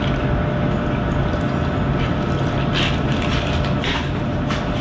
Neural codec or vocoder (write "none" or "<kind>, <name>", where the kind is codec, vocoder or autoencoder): none